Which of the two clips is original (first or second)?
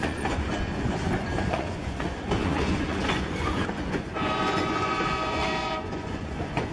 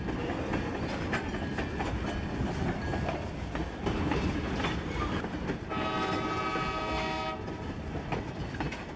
second